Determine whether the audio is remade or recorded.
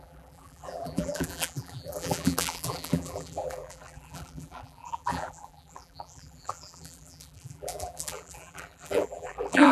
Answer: remade